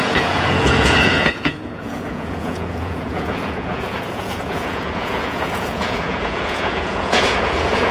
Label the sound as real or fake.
fake